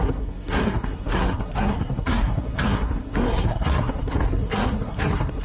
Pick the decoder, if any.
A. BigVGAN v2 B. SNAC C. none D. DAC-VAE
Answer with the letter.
B